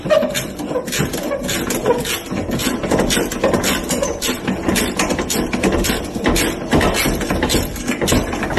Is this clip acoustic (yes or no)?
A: yes